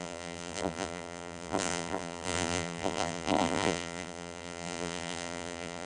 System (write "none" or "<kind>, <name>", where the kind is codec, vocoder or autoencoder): vocoder, BigVGAN v2